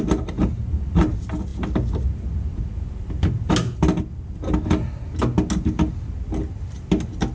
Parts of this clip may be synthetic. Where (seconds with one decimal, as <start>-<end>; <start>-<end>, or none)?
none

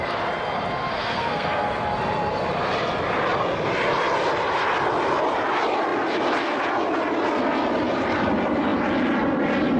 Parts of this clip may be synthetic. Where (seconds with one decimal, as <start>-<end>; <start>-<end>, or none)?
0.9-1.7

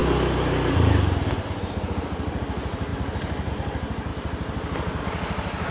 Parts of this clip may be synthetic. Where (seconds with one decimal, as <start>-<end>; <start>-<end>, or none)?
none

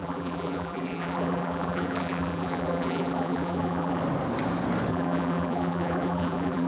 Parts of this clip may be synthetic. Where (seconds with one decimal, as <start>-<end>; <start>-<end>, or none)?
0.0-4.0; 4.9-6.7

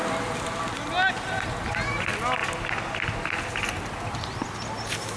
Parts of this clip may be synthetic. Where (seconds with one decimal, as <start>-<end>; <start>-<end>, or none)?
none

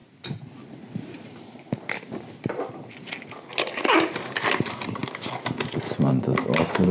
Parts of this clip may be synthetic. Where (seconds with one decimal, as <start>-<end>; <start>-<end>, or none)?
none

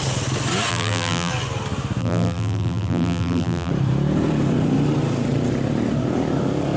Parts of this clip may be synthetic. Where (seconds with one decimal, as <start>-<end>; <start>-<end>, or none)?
0.7-1.3; 2.0-3.7